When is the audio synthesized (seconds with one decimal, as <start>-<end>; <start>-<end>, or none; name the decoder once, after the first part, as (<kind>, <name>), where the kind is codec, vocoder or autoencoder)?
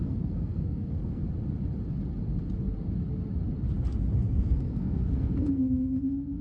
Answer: 0.0-1.2 (codec, SNAC); 4.4-6.4